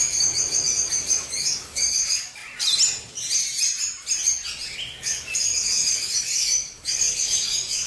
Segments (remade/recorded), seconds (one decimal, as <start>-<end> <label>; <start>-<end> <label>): 0.0-2.4 remade; 2.4-5.0 recorded; 5.0-7.9 remade